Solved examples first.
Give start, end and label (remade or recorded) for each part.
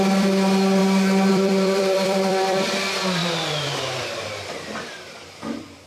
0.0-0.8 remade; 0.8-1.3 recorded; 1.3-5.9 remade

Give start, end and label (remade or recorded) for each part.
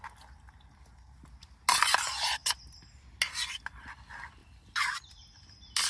0.0-5.9 recorded